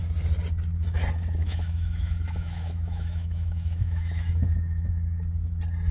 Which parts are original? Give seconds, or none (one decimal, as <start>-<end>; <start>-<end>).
0.0-1.4; 4.9-5.9